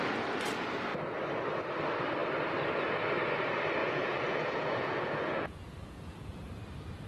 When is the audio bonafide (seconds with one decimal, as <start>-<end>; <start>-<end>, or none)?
0.0-3.8; 6.4-7.1